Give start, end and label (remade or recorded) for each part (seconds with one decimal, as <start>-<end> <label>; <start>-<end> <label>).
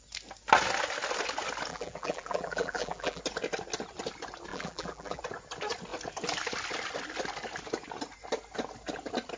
0.0-1.7 recorded; 1.7-3.2 remade; 3.2-4.5 recorded; 4.5-5.2 remade; 5.2-9.4 recorded